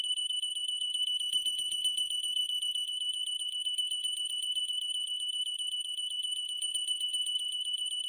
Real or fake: fake